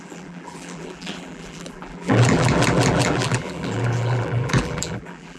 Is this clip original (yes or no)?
no